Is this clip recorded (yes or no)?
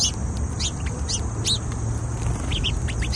yes